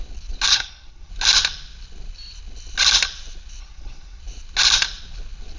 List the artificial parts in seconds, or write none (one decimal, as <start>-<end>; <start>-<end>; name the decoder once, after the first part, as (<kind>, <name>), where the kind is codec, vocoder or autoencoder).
0.5-1.1 (codec, HILCodec); 3.6-4.2